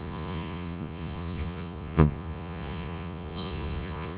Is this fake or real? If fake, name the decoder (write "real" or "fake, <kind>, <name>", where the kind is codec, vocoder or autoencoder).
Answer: fake, vocoder, Vocos